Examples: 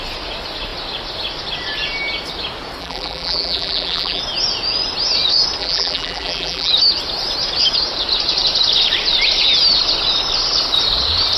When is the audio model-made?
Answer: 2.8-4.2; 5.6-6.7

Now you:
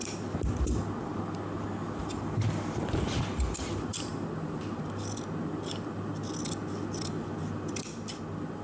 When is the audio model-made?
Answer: 0.0-8.6

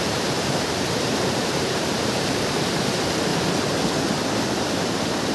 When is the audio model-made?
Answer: 0.0-3.3; 4.5-5.3

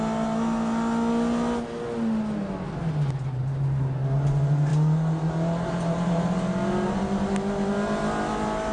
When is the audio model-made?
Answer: none